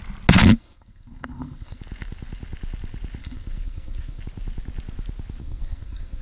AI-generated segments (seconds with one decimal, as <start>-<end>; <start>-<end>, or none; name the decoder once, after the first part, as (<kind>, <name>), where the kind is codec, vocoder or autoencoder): 0.4-1.8 (codec, SNAC); 3.2-4.2; 5.4-6.2